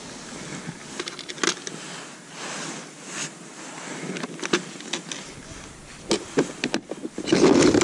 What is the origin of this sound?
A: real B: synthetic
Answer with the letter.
A